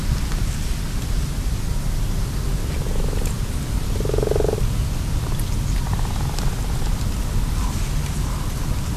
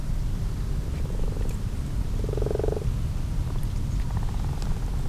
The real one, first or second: first